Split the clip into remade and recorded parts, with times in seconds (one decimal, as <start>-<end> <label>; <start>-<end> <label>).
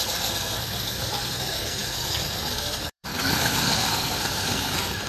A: 0.0-5.1 remade